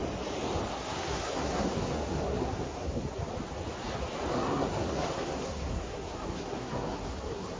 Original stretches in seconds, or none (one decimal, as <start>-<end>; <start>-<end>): 0.0-0.7; 3.0-4.3